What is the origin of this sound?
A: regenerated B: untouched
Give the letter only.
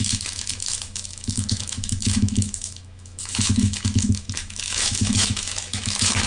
A